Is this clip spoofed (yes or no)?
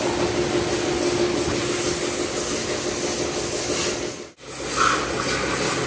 no